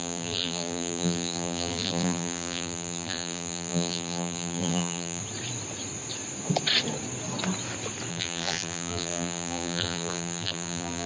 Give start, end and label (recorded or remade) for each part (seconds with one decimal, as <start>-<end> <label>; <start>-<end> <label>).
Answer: 0.0-5.2 remade; 5.2-8.1 recorded; 8.1-11.1 remade